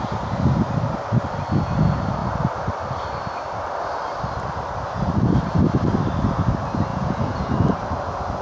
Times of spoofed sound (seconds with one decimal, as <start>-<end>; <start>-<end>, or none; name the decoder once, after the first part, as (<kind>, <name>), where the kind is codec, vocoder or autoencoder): 6.9-7.5 (vocoder, Vocos)